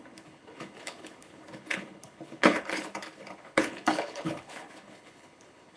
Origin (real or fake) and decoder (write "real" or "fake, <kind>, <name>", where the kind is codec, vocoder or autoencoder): fake, codec, HILCodec